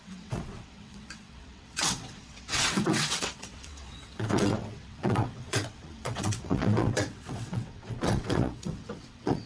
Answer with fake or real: fake